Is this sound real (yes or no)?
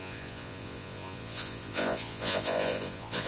no